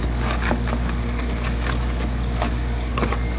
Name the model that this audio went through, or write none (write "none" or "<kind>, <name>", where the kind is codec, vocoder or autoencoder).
codec, DAC